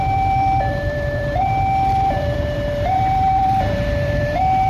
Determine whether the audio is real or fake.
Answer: fake